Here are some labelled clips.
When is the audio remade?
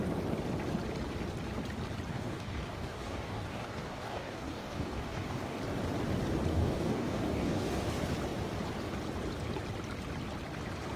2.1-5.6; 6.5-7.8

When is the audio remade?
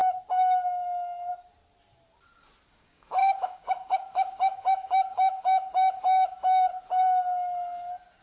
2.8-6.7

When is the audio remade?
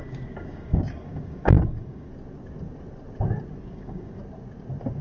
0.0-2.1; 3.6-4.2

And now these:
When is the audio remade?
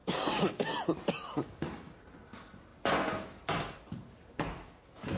0.0-0.7; 1.2-2.0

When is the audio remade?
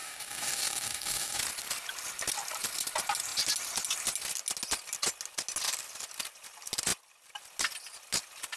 0.0-1.4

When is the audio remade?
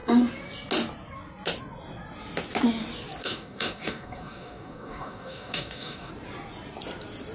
3.2-6.1